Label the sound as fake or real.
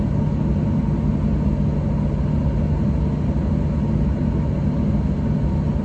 real